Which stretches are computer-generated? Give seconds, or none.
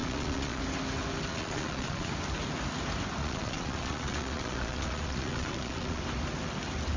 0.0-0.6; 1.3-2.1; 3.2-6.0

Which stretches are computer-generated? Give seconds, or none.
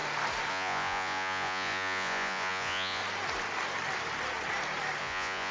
0.5-3.0; 5.0-5.5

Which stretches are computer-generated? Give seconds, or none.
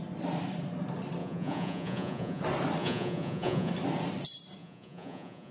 1.2-2.4; 2.8-3.7; 4.6-5.5